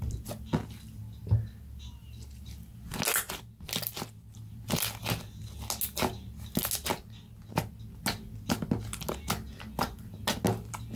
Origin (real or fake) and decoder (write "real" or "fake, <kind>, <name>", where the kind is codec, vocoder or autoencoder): real